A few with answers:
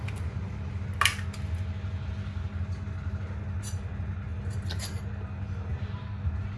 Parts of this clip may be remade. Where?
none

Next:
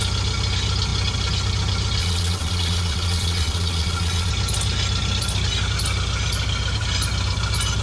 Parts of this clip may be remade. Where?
2.0-4.3 (vocoder, Vocos)

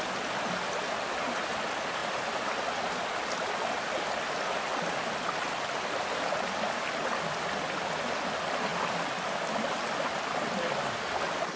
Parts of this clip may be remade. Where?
none

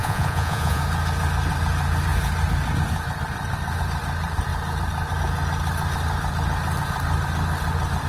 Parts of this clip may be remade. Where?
0.0-0.8 (vocoder, Vocos)

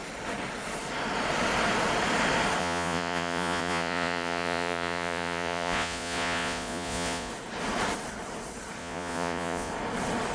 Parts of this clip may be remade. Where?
2.6-7.3 (vocoder, Vocos); 8.8-9.7

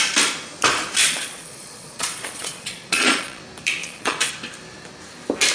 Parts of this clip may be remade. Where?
1.0-3.4 (vocoder, Vocos); 3.8-4.3

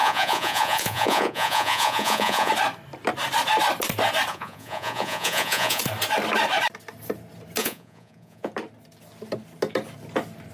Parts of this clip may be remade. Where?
0.0-2.5 (vocoder, Vocos); 4.3-5.8; 7.6-8.5

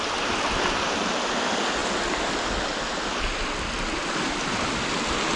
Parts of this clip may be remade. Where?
none